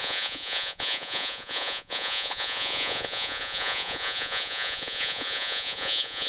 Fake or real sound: fake